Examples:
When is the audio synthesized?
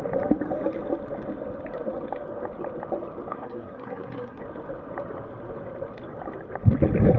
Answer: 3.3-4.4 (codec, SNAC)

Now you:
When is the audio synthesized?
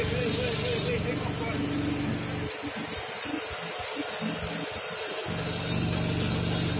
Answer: none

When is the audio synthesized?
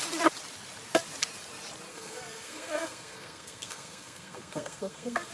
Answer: 1.9-5.3 (codec, SNAC)